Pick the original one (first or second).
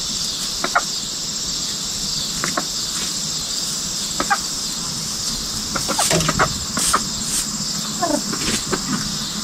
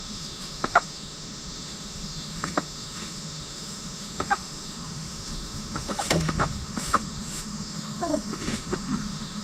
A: first